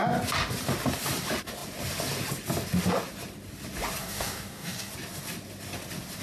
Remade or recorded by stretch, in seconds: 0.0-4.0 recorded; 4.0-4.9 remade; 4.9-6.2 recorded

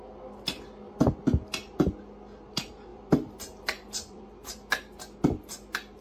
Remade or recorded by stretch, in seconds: 0.0-2.9 recorded; 2.9-4.3 remade; 4.3-6.0 recorded

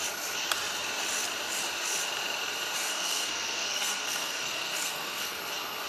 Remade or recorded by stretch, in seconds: 0.0-2.8 recorded; 2.8-5.4 remade; 5.4-5.9 recorded

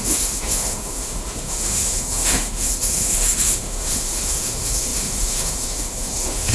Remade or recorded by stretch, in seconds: 0.0-6.5 remade

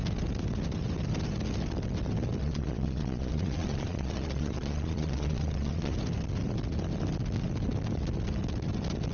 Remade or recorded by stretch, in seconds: 0.0-2.4 recorded; 2.4-5.9 remade; 5.9-9.1 recorded

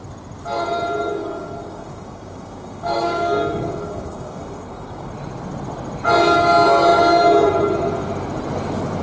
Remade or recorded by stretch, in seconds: 0.0-1.2 recorded; 1.2-5.1 remade; 5.1-9.0 recorded

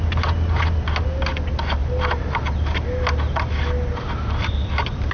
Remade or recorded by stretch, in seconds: 0.0-5.1 recorded

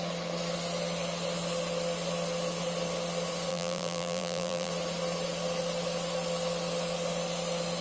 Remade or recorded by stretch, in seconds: 0.0-3.5 recorded; 3.5-4.7 remade; 4.7-7.8 recorded